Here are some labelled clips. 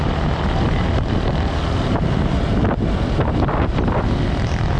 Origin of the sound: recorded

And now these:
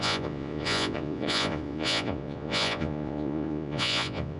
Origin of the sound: remade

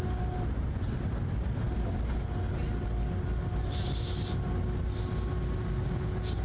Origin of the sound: recorded